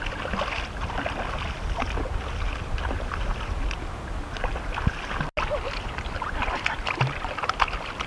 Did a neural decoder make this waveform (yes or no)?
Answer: no